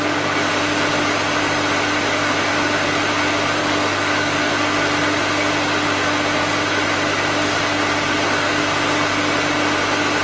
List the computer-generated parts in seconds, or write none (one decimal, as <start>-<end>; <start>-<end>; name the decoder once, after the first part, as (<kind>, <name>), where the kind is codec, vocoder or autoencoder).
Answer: 3.6-4.5 (codec, DAC)

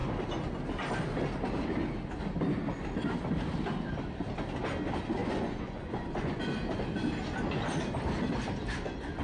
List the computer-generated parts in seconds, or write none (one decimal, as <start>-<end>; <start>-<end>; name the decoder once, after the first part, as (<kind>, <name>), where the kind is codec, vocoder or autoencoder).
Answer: 5.2-6.4 (vocoder, Vocos)

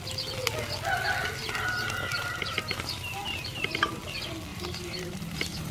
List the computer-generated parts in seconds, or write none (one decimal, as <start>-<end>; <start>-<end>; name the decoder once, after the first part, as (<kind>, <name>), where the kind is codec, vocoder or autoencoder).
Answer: 2.1-3.9 (vocoder, BigVGAN v2); 4.5-5.7

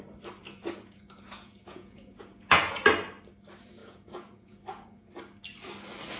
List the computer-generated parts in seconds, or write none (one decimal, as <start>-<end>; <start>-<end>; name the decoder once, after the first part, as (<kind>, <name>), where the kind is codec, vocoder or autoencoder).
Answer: 0.4-2.8 (vocoder, Vocos); 3.8-5.2

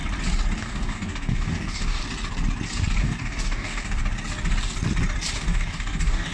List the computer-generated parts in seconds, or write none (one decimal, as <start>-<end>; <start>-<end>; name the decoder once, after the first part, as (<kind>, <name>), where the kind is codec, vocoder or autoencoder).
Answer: 0.6-2.0 (codec, DAC); 3.0-4.0; 5.4-6.3

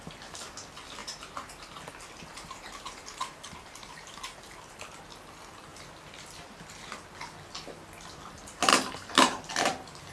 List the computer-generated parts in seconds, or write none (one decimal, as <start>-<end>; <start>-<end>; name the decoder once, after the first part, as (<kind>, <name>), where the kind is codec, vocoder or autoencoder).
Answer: 1.0-1.8 (vocoder, BigVGAN v2); 2.3-4.7; 8.7-9.5

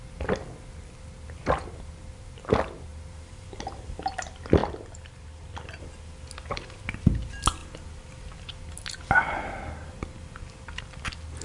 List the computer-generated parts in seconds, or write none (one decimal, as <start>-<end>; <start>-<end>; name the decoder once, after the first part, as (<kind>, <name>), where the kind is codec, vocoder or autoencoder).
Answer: 2.9-4.1 (vocoder, BigVGAN v2); 4.6-5.8; 7.6-10.8